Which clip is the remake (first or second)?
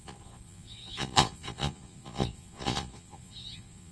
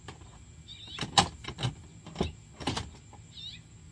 first